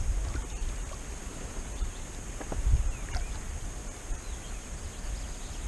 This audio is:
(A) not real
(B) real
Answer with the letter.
B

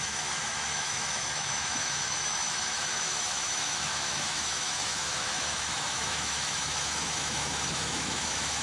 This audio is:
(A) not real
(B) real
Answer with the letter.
A